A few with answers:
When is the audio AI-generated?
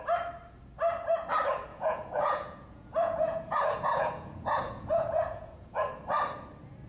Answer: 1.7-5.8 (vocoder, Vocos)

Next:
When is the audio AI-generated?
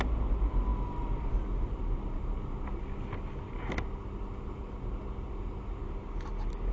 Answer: none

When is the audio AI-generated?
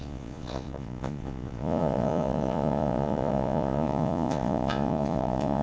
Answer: 0.0-5.6 (vocoder, Vocos)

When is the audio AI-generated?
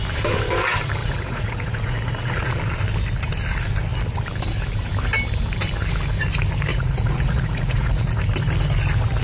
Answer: 1.0-2.5 (vocoder, Vocos); 6.7-8.2